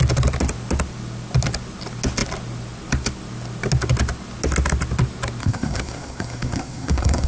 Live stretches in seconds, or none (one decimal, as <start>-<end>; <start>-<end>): 0.0-5.4